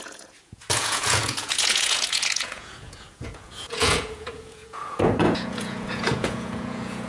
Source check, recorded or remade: remade